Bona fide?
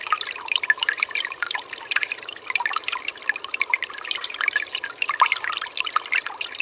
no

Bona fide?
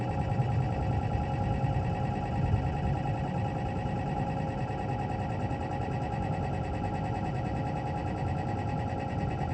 yes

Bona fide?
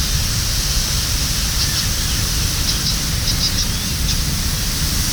yes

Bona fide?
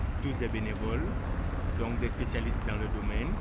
yes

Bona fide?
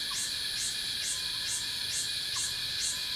yes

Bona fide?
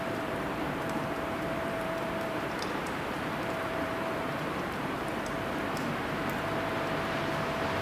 no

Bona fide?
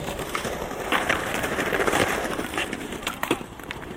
no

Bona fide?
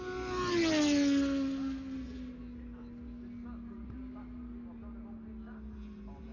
yes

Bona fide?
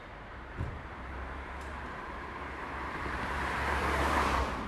no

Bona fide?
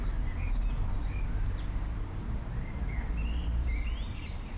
no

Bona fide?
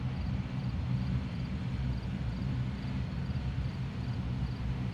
yes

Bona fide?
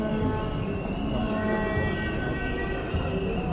yes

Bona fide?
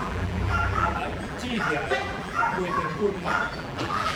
no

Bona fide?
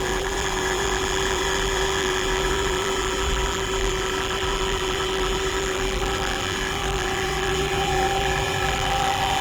no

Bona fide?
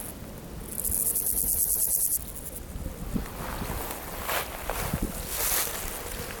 yes